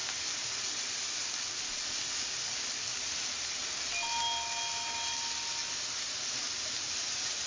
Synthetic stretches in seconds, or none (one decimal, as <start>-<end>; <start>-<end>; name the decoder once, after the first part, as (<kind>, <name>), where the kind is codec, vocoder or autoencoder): none